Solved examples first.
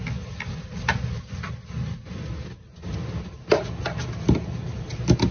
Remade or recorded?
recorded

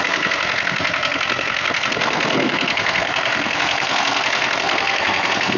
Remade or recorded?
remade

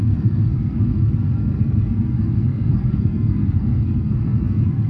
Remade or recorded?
remade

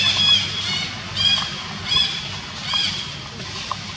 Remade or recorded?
recorded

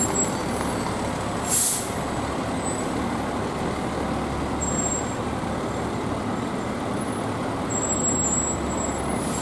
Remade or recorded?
recorded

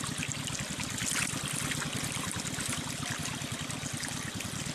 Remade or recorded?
recorded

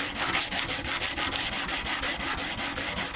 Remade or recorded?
recorded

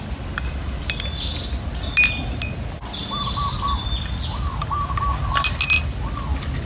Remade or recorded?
recorded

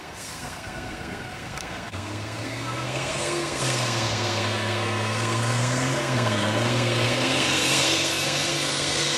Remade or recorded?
remade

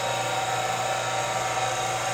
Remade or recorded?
recorded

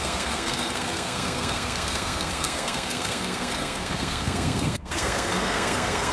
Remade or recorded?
remade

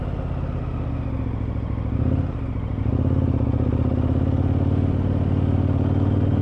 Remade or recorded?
recorded